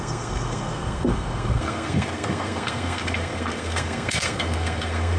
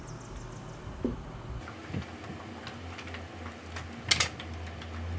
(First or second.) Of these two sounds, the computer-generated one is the first